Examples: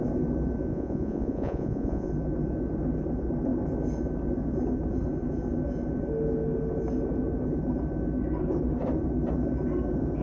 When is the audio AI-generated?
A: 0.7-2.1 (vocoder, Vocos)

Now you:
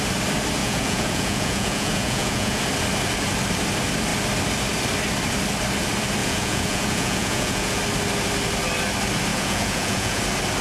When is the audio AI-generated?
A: 0.6-2.6 (vocoder, Vocos); 6.2-7.8; 9.3-10.2